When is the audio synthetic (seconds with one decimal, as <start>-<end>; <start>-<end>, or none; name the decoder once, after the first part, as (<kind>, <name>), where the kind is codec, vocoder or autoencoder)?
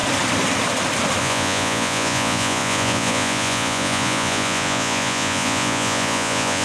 1.2-6.6 (vocoder, Vocos)